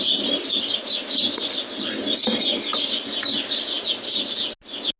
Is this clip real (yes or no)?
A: yes